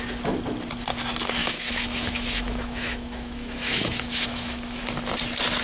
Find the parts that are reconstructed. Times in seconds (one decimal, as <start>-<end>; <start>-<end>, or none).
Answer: 1.4-4.8